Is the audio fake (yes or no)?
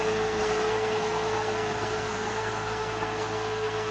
yes